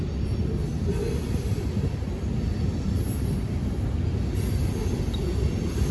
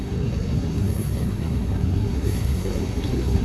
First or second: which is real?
first